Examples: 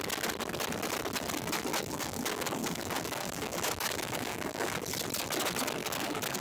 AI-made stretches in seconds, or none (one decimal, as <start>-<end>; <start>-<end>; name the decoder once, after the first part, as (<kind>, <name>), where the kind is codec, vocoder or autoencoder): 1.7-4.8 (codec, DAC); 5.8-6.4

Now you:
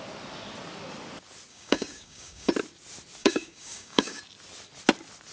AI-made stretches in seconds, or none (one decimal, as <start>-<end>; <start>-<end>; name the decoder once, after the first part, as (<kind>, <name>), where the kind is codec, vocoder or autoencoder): 1.5-2.5 (codec, DAC); 3.2-4.2

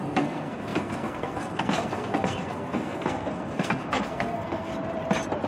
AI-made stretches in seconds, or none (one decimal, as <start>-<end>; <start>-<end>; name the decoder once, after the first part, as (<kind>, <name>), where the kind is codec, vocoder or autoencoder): 0.0-4.7 (codec, SNAC)

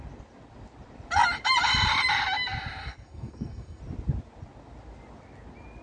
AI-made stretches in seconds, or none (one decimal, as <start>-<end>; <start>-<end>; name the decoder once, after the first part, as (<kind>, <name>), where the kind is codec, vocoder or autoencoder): 2.8-3.8 (codec, SNAC)